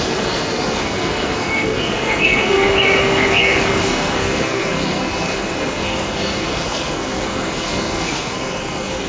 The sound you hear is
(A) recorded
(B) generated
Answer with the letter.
B